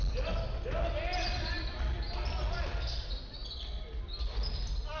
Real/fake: real